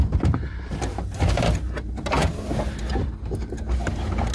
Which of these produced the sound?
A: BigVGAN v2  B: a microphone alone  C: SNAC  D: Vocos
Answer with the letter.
B